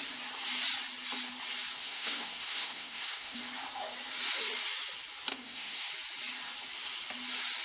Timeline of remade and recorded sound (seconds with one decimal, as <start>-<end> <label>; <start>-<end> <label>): 0.0-1.8 recorded; 1.8-3.4 remade; 3.4-5.3 recorded; 5.3-5.9 remade; 5.9-7.6 recorded